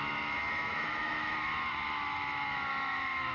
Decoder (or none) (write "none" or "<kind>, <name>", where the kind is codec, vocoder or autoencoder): autoencoder, DAC-VAE